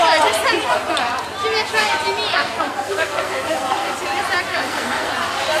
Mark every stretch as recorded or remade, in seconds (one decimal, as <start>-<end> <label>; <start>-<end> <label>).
0.0-2.3 recorded; 2.3-3.9 remade; 3.9-4.5 recorded; 4.5-5.1 remade; 5.1-5.6 recorded